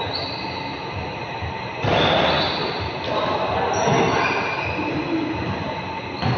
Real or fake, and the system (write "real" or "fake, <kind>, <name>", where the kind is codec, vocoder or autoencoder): real